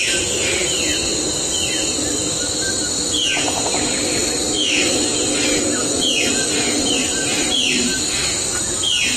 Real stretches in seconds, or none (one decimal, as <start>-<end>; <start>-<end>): 0.0-3.2; 3.9-4.6; 6.9-9.2